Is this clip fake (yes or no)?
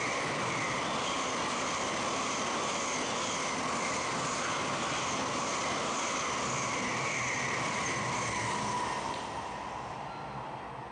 no